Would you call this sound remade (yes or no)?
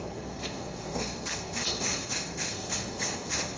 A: yes